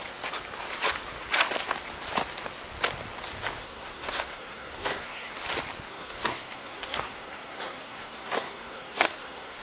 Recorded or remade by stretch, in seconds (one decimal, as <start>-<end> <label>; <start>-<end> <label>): 0.0-3.6 recorded; 3.6-5.3 remade; 5.3-5.9 recorded; 5.9-9.6 remade